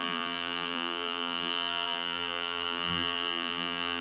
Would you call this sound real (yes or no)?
no